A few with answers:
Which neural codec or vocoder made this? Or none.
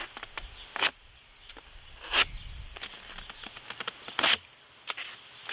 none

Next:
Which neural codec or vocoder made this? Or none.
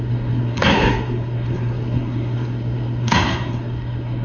codec, SNAC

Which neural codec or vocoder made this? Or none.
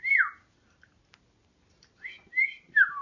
none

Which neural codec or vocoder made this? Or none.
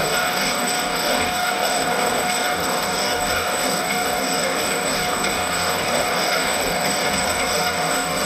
codec, DAC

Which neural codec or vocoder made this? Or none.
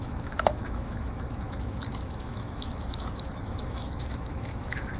autoencoder, DAC-VAE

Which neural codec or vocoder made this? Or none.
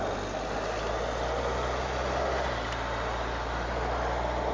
none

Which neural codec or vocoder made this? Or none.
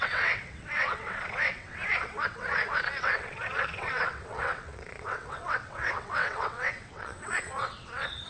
vocoder, WaveNeXt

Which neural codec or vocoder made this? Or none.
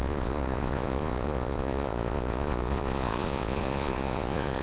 vocoder, Vocos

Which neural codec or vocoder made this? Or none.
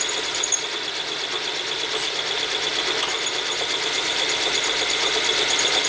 none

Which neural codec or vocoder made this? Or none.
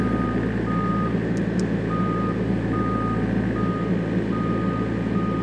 none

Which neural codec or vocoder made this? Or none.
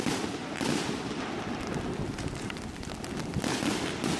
none